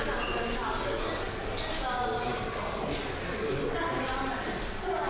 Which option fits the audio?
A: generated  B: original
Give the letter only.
B